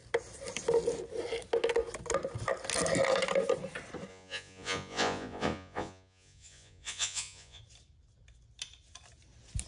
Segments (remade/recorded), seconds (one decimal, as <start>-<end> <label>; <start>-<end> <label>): 0.0-4.1 recorded; 4.1-7.6 remade; 7.6-9.7 recorded